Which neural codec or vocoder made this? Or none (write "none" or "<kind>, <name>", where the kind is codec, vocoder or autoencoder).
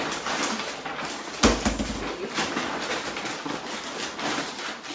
none